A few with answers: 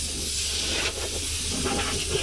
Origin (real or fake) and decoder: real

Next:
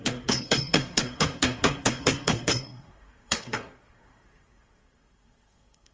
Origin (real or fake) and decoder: fake, codec, SNAC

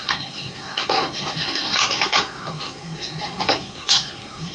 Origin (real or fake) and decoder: fake, codec, SNAC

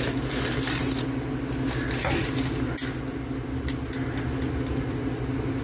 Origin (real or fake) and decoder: real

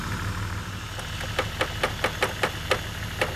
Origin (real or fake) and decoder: real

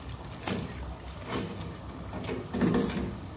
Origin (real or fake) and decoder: real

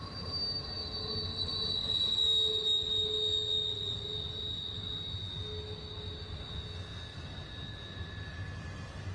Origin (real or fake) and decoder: real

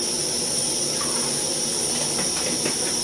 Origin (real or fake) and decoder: real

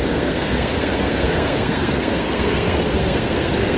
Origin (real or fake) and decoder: fake, codec, SNAC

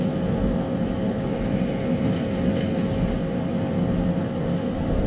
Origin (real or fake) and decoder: real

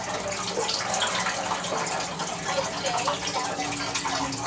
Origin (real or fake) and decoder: real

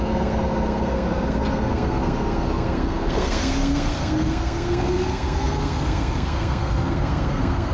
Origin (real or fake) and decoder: fake, codec, SNAC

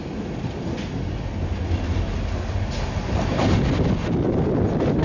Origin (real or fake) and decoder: real